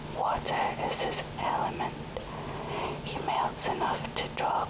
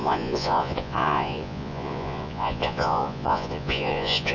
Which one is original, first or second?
first